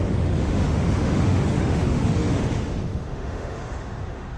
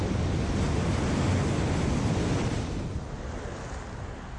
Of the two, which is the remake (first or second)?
first